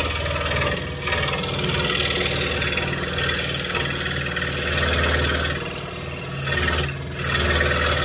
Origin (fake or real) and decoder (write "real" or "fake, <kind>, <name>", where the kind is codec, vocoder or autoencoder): real